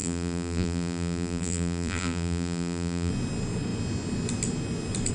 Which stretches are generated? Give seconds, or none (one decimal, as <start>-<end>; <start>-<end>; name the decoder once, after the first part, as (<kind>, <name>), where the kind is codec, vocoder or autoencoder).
0.0-3.1 (vocoder, BigVGAN v2)